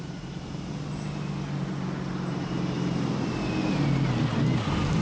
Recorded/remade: recorded